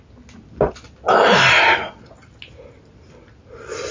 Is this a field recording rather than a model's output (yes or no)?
yes